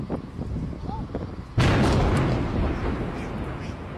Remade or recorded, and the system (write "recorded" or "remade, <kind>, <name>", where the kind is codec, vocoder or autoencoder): recorded